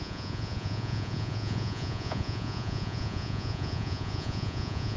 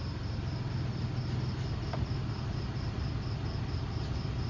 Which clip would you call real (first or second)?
second